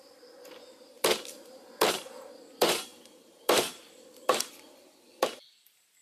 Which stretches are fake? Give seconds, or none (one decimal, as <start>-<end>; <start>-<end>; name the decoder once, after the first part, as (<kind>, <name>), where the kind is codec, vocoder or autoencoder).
0.0-6.0 (vocoder, BigVGAN v2)